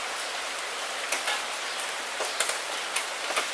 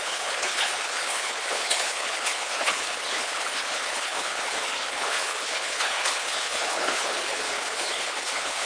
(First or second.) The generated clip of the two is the second